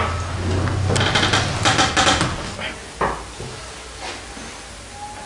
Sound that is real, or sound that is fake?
real